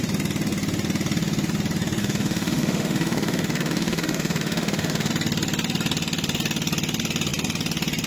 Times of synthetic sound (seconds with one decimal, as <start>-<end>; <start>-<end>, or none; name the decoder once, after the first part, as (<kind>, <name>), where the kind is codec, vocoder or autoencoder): 2.0-5.1 (autoencoder, DAC-VAE)